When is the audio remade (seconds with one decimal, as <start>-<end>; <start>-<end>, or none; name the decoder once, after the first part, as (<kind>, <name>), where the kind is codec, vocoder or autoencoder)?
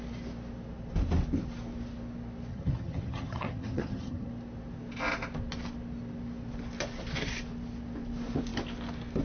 2.5-4.3 (vocoder, HiFi-GAN)